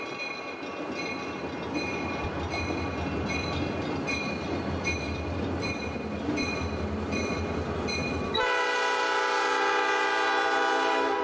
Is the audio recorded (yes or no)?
yes